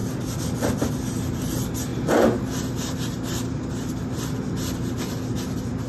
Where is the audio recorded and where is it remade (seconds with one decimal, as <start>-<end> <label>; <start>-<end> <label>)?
0.0-5.9 recorded